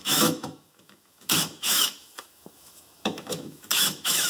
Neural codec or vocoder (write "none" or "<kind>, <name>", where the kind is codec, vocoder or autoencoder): autoencoder, DAC-VAE